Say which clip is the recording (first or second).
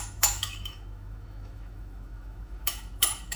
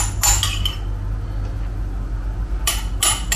second